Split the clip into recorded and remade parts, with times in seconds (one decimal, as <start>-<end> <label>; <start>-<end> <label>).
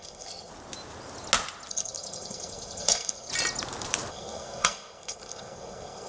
0.0-0.5 remade; 0.5-1.7 recorded; 1.7-3.3 remade; 3.3-4.1 recorded; 4.1-6.1 remade